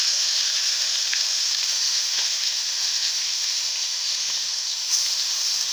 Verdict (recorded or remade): remade